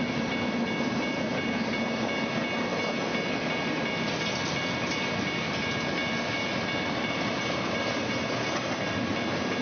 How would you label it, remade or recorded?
recorded